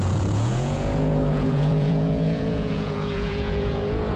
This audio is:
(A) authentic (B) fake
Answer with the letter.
B